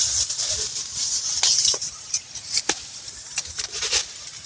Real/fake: real